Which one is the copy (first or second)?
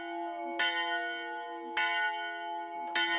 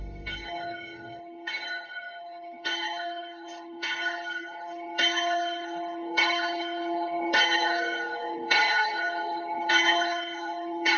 second